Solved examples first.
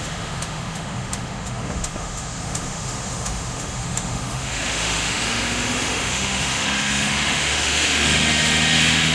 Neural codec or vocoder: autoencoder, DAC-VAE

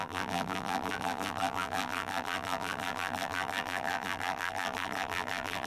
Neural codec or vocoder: vocoder, BigVGAN v2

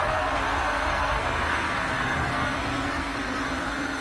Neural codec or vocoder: codec, SNAC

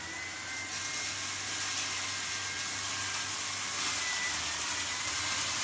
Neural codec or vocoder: none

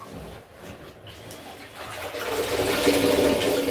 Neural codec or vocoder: none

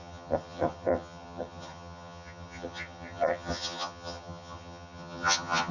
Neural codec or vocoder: vocoder, HiFi-GAN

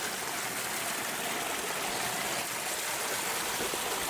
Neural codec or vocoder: none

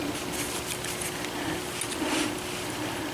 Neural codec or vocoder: none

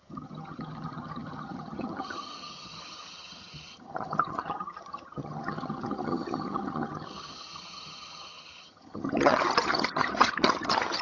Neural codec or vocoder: vocoder, HiFi-GAN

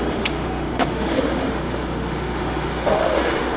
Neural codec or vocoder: autoencoder, DAC-VAE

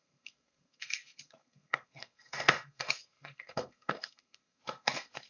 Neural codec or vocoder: codec, SNAC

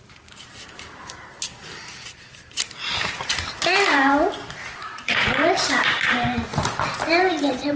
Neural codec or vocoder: vocoder, BigVGAN v2